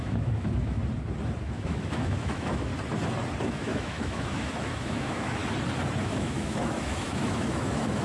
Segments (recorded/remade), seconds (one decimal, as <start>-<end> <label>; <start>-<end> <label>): 0.0-0.8 remade; 0.8-1.4 recorded; 1.4-2.7 remade; 2.7-3.4 recorded; 3.4-5.4 remade; 5.4-6.0 recorded; 6.0-8.0 remade